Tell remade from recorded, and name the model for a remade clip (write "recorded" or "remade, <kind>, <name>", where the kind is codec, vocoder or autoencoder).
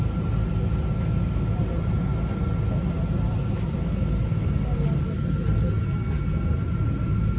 recorded